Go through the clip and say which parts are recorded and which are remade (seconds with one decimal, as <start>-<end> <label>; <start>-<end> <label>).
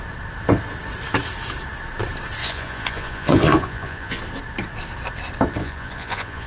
0.0-2.4 recorded; 2.4-4.2 remade; 4.2-5.6 recorded; 5.6-6.5 remade